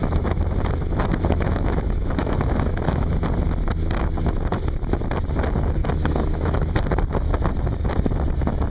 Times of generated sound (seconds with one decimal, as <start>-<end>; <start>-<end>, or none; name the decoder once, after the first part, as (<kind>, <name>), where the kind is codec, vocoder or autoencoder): 0.0-3.2 (autoencoder, DAC-VAE); 5.8-6.8